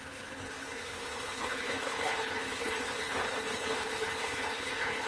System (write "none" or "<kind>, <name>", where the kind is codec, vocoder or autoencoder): codec, HILCodec